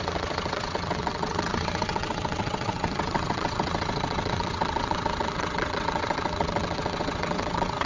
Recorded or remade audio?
remade